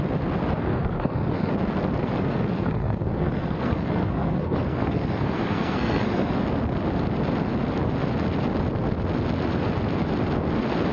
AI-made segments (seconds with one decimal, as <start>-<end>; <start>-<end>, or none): 0.6-1.5; 2.0-6.4